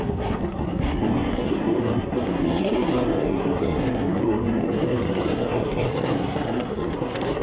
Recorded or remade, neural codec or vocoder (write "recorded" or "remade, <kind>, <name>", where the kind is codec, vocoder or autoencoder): remade, codec, SNAC